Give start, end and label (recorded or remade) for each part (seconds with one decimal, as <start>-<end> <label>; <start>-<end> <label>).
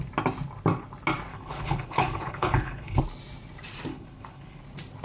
0.0-1.3 recorded; 1.3-3.0 remade; 3.0-3.9 recorded; 3.9-4.6 remade; 4.6-5.0 recorded